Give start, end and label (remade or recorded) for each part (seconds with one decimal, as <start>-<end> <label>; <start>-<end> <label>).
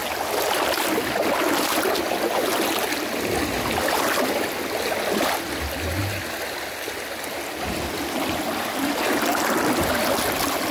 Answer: 0.0-10.7 recorded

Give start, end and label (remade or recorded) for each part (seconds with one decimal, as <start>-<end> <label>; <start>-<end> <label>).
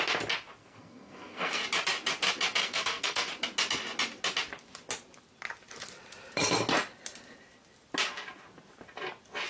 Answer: 0.0-0.6 recorded; 0.6-1.6 remade; 1.6-2.6 recorded; 2.6-3.3 remade; 3.3-9.5 recorded